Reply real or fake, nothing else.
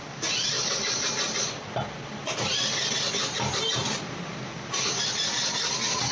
real